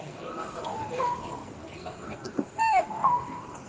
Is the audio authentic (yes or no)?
no